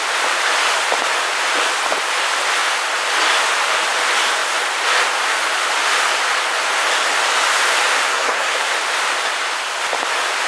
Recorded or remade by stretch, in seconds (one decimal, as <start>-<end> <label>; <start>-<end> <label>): 0.0-8.1 recorded; 8.1-8.7 remade; 8.7-10.5 recorded